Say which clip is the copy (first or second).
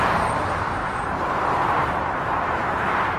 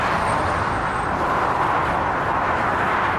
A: first